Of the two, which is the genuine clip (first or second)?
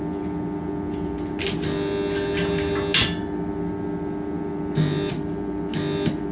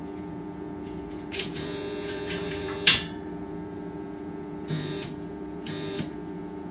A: first